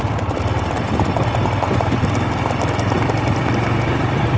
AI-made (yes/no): yes